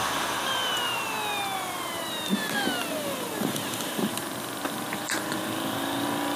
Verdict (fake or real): fake